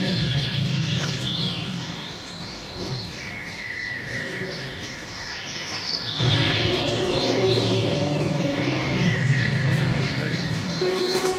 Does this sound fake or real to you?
fake